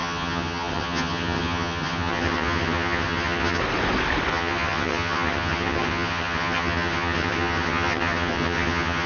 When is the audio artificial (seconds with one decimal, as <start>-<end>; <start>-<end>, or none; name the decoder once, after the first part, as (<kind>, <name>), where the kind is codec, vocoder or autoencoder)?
0.0-3.6 (vocoder, HiFi-GAN); 4.3-9.1